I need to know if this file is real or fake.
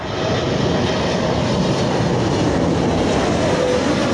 real